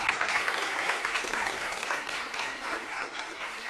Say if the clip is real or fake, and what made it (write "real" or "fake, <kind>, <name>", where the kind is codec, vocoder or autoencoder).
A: fake, codec, SNAC